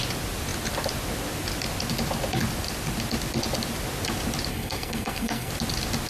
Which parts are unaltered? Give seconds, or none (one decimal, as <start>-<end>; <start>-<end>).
0.0-4.5; 5.5-6.1